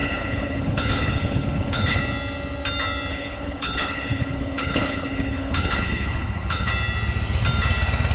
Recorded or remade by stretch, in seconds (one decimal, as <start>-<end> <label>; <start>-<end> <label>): 0.0-2.0 remade; 2.0-3.1 recorded; 3.1-6.7 remade; 6.7-8.1 recorded